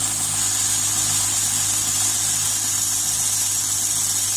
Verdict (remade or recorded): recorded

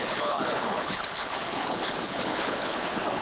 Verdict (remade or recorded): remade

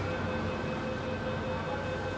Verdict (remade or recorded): recorded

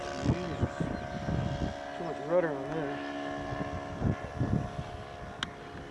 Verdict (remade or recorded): recorded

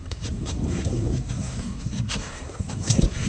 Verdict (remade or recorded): remade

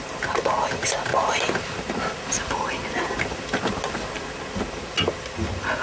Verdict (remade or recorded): recorded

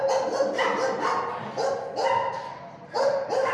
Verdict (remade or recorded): recorded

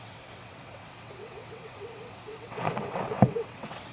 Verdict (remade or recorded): remade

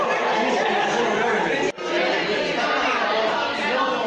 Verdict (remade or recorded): recorded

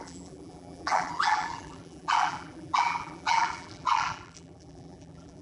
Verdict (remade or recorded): remade